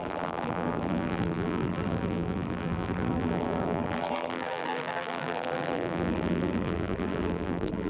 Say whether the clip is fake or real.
fake